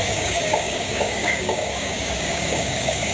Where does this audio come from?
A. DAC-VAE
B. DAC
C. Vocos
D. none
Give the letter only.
B